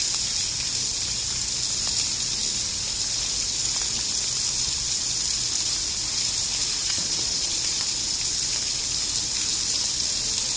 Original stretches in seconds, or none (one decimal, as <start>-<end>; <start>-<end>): 0.0-6.8; 7.9-10.6